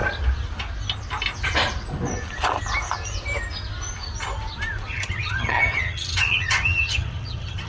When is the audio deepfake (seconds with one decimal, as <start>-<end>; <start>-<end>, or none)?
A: 4.9-7.7